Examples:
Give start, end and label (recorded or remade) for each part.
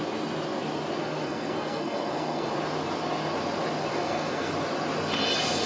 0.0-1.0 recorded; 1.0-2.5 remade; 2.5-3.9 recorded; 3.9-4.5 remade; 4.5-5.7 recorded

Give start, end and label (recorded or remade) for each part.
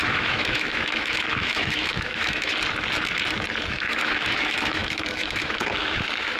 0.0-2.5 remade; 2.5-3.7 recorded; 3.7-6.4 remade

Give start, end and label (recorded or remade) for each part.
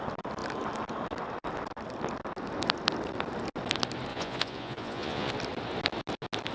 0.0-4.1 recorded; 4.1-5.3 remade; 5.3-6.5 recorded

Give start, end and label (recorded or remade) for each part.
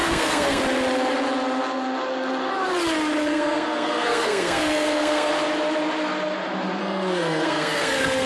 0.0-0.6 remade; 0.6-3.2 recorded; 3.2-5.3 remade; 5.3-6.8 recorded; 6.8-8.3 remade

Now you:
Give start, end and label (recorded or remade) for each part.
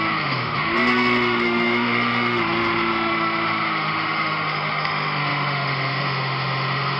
0.0-7.0 remade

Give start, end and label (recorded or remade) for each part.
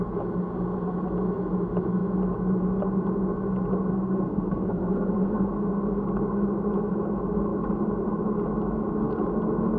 0.0-3.9 recorded; 3.9-5.5 remade; 5.5-9.8 recorded